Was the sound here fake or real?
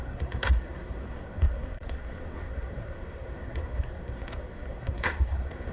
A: fake